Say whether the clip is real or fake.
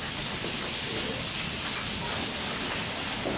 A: real